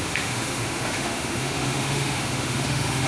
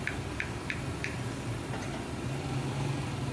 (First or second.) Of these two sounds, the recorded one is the second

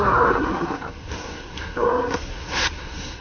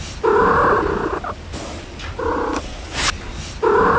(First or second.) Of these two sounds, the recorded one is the second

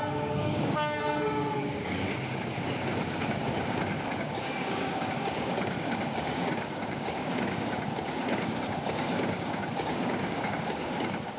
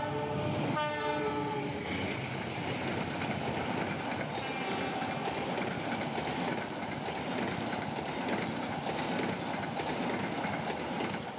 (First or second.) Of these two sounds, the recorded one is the second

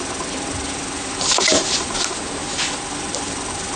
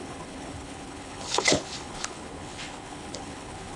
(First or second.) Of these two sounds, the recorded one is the first